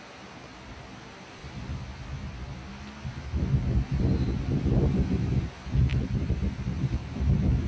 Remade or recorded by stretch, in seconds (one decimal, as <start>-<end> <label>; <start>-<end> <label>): 0.0-1.4 remade; 1.4-3.9 recorded; 3.9-7.7 remade